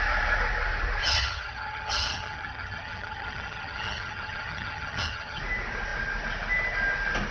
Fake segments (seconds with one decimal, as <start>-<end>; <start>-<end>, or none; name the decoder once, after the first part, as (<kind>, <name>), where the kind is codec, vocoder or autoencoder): 1.0-5.4 (vocoder, HiFi-GAN)